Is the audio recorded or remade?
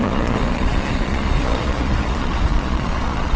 remade